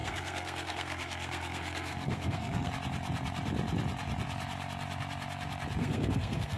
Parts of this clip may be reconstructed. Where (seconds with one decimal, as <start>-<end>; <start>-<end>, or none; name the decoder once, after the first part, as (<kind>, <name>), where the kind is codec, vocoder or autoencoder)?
0.0-2.7 (codec, SNAC); 5.8-6.6